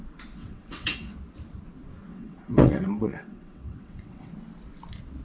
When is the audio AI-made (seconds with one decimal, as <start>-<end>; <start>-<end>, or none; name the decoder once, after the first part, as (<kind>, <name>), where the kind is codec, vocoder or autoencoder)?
0.4-1.1 (vocoder, WaveNeXt); 2.1-4.3